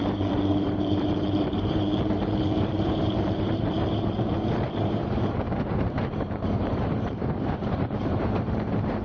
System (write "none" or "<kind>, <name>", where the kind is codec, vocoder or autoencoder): vocoder, BigVGAN v2